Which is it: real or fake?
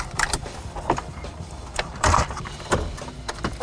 fake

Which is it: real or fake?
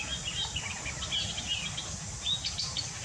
real